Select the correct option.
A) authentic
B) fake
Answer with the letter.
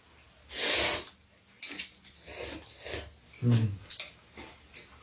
A